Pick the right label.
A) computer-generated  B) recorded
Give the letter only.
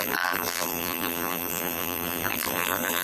A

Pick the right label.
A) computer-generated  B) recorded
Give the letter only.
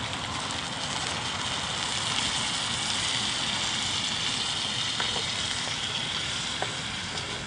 B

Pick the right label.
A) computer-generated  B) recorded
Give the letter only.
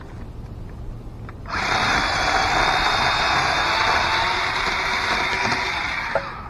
B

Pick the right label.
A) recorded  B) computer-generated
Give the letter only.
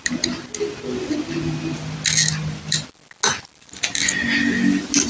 A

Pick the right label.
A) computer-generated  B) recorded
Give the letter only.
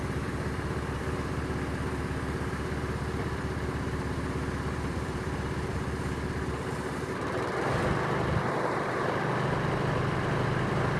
A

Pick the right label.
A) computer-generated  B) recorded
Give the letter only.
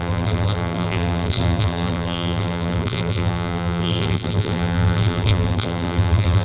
A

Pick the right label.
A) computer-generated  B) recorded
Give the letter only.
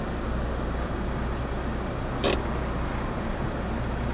B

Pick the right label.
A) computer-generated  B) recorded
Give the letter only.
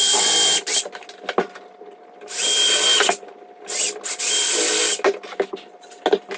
B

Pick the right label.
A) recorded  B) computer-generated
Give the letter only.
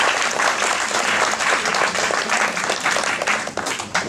B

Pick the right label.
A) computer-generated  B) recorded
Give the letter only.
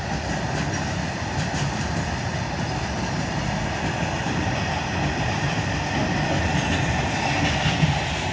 B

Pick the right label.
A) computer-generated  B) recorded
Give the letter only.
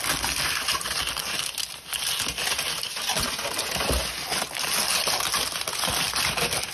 B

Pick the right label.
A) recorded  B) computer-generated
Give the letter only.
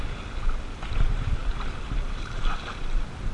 B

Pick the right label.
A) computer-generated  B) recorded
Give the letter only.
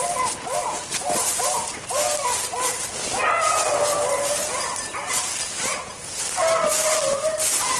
B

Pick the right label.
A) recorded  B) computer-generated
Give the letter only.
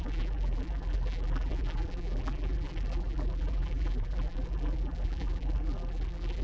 B